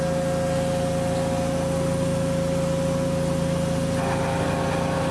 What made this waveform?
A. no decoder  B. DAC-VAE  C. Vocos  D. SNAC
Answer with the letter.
A